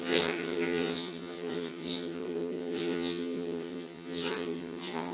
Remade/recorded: remade